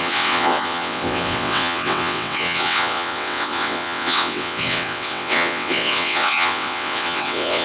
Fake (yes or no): yes